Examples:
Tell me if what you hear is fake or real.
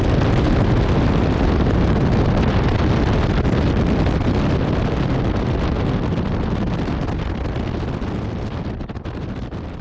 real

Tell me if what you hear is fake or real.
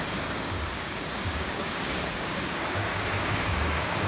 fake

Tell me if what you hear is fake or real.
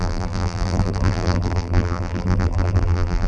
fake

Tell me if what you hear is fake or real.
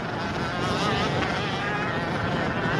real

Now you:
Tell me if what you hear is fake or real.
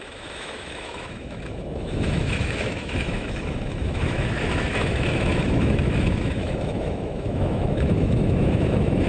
fake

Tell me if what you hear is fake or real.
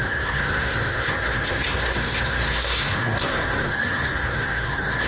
fake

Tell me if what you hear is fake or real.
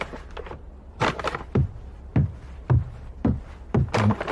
fake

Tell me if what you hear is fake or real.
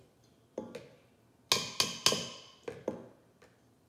real